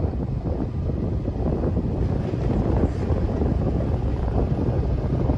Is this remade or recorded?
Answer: recorded